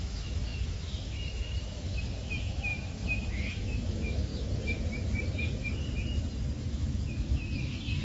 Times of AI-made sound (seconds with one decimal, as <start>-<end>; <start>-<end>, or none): 0.0-4.3; 6.7-8.0